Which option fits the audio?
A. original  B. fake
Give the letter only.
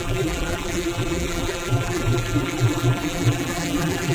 B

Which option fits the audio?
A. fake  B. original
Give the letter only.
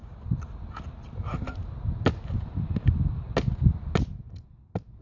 B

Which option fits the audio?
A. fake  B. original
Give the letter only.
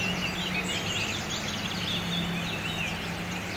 B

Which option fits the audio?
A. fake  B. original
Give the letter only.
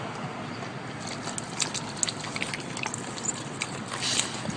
B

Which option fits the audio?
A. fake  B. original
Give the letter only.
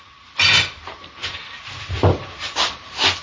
B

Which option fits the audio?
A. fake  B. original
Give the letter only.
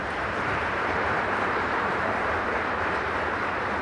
A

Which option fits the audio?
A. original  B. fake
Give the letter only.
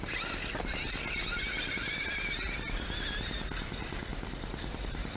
A